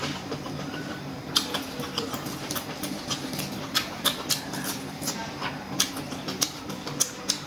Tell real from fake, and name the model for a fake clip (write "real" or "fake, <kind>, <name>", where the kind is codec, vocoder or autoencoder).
fake, vocoder, BigVGAN v2